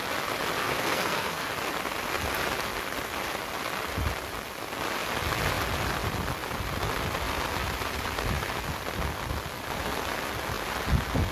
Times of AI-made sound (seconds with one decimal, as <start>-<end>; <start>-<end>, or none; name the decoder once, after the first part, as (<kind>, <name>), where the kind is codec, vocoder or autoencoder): 0.6-1.5 (codec, SNAC)